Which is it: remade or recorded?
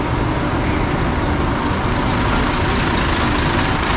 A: recorded